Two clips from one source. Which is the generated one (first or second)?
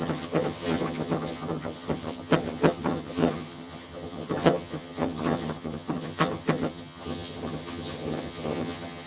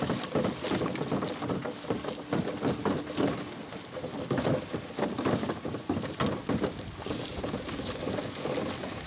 first